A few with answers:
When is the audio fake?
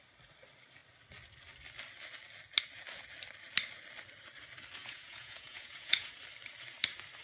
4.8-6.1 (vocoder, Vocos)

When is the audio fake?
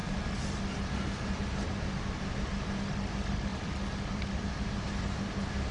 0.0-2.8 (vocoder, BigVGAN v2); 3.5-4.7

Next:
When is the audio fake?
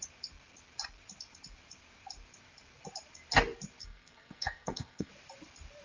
3.8-5.1 (codec, SNAC)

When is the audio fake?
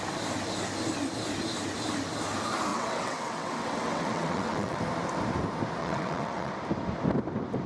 2.7-4.8 (vocoder, WaveNeXt); 5.8-6.5